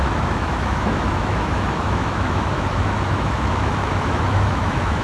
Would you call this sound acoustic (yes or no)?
no